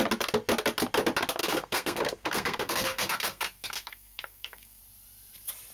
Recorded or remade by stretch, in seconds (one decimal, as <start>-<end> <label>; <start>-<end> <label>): 0.0-1.4 recorded; 1.4-4.8 remade; 4.8-5.7 recorded